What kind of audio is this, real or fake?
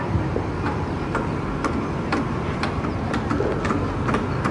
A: real